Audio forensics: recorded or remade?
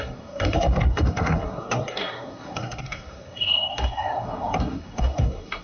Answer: remade